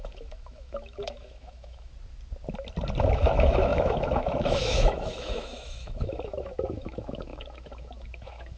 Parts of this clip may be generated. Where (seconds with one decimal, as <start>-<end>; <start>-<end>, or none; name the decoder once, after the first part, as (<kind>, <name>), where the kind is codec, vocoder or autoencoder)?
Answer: 0.0-1.9 (autoencoder, DAC-VAE); 3.0-8.6